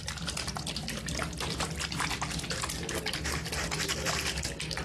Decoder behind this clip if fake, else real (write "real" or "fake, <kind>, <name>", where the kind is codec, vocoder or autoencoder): real